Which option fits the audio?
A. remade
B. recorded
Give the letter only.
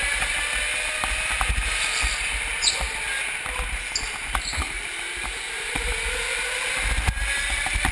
B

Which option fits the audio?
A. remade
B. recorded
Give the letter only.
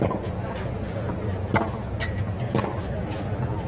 B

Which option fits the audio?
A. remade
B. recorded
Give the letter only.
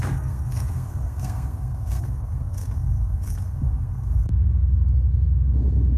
A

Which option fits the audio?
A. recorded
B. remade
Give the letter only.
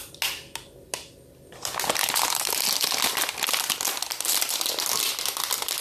A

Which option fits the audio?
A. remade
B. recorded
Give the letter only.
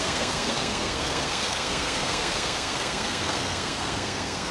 A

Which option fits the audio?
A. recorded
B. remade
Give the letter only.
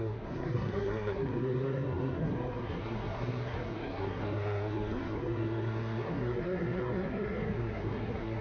B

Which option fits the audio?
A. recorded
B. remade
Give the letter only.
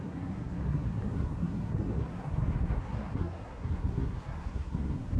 B